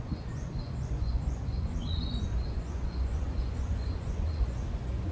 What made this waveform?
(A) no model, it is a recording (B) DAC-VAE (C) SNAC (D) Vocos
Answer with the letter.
D